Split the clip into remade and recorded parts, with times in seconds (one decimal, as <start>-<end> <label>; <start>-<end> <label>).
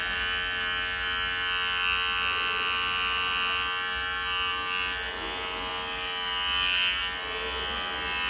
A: 0.0-8.3 recorded